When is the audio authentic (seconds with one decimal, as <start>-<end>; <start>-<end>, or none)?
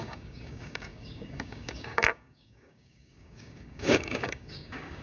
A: none